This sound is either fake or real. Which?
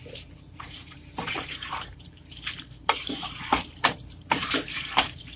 fake